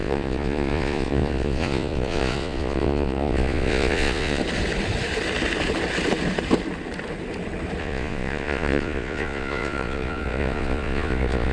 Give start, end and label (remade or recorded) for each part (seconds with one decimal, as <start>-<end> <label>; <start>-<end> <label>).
0.0-4.4 remade; 4.4-7.8 recorded; 7.8-11.5 remade